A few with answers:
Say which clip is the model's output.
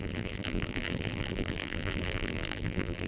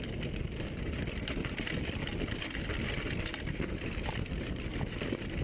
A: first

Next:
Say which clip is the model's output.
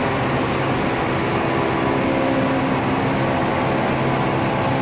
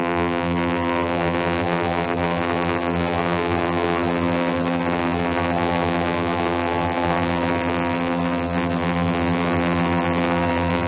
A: second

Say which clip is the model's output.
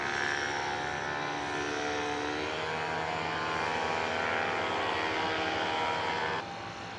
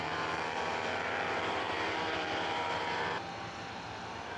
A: second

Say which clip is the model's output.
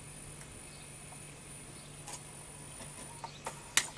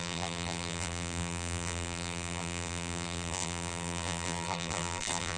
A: second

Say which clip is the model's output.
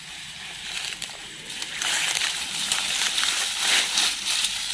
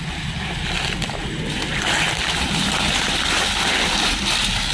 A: first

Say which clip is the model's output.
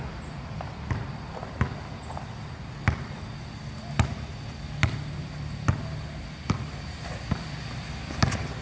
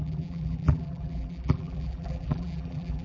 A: second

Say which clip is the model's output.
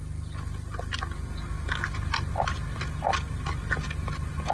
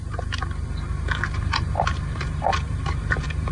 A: second